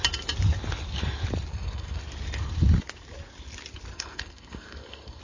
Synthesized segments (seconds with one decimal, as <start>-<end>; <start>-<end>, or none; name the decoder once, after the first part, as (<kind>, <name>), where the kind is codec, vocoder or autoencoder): 1.5-2.0 (codec, SNAC); 3.9-5.2